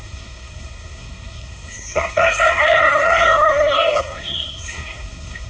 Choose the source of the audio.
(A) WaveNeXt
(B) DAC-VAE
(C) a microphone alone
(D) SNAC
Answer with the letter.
D